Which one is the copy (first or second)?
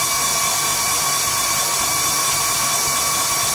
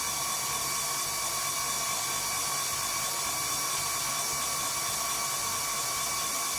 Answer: first